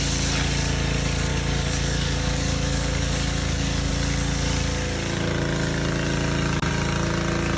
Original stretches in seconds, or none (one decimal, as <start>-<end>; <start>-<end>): 0.0-1.3; 3.9-7.6